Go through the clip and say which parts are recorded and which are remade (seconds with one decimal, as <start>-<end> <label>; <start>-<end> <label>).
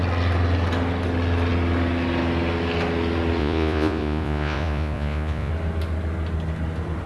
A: 0.0-3.4 recorded; 3.4-5.5 remade; 5.5-7.1 recorded